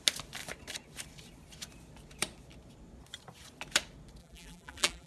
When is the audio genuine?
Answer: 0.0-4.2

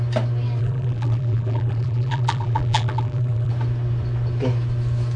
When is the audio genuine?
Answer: 0.0-0.6; 3.5-5.2